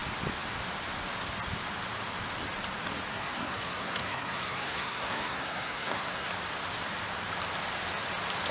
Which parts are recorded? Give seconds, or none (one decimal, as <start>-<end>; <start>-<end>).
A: 0.0-3.1; 6.3-8.5